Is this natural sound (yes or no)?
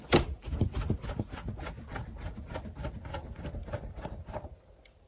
yes